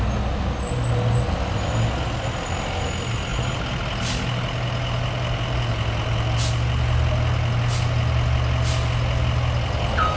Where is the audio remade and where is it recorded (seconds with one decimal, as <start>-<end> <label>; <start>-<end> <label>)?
0.0-10.2 recorded